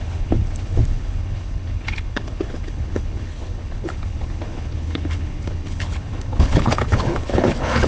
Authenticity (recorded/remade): remade